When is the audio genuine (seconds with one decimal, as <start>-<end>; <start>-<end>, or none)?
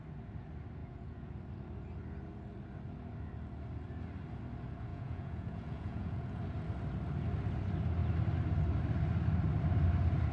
0.0-0.8; 1.3-4.9; 6.4-10.3